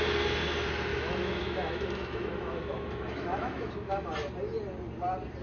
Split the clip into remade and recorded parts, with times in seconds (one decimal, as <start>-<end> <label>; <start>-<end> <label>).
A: 0.0-0.9 recorded; 0.9-4.1 remade; 4.1-5.4 recorded